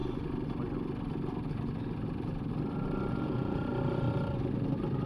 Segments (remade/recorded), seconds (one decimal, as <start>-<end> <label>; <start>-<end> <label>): 0.0-3.1 recorded; 3.1-3.7 remade; 3.7-5.1 recorded